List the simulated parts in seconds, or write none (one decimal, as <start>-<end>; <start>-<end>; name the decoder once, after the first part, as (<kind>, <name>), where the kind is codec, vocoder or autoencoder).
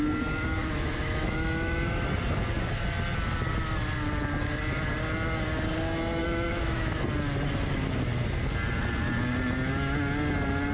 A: 0.6-2.1 (autoencoder, DAC-VAE); 6.2-7.0